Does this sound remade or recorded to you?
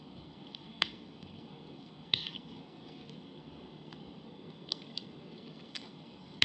remade